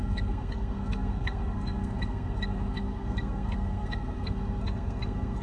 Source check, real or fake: fake